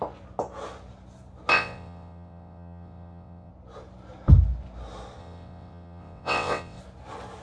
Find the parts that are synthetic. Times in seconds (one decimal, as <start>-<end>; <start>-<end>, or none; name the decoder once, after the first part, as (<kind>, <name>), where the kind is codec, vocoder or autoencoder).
1.5-3.5 (vocoder, WaveNeXt); 5.2-6.8